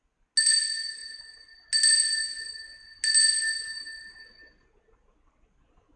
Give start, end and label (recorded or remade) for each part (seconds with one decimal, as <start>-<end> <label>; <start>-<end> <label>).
0.0-6.0 recorded